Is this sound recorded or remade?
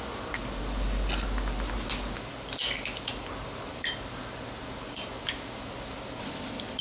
recorded